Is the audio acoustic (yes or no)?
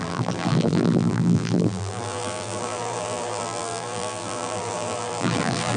no